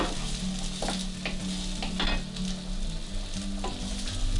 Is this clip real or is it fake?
real